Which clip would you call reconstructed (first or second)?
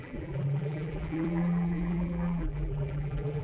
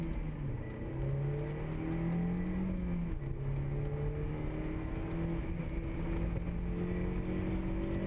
first